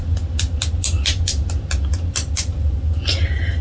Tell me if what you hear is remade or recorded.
recorded